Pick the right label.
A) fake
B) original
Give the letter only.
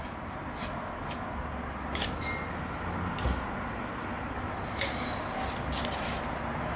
B